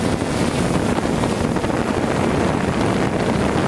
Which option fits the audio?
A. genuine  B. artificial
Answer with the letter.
B